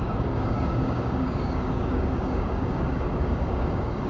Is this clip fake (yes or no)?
yes